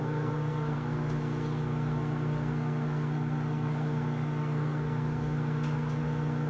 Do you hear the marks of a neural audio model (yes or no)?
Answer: yes